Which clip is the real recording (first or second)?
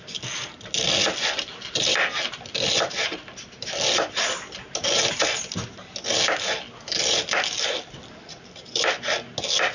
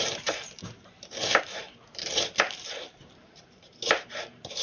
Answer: first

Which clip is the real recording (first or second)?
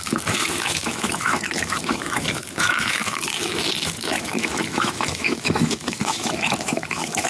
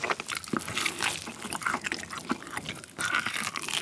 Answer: second